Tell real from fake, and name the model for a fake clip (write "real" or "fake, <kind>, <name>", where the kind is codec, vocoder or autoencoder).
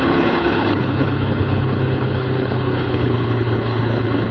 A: fake, codec, HILCodec